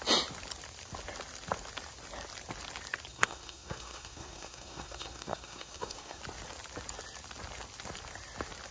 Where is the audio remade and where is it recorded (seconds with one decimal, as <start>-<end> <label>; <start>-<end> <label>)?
0.0-3.1 recorded; 3.1-6.2 remade; 6.2-8.7 recorded